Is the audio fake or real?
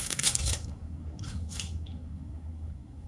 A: fake